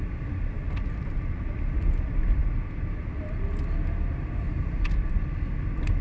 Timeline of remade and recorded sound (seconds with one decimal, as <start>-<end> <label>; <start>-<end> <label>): 0.0-6.0 recorded